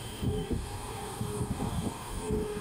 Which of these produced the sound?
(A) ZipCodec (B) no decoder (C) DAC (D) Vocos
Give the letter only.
C